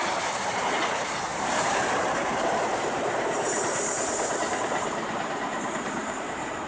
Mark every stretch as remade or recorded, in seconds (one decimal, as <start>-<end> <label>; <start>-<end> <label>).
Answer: 0.0-1.3 recorded; 1.3-5.3 remade; 5.3-6.0 recorded; 6.0-6.7 remade